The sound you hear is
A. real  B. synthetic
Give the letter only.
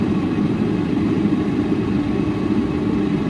B